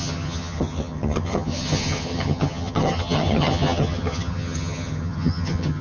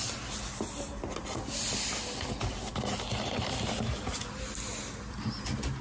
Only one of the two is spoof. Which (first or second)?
first